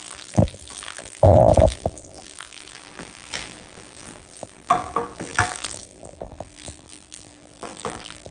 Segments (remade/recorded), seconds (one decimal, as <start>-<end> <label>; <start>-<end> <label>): 0.0-8.3 remade